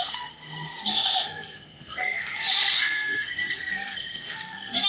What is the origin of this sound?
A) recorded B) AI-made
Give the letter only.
B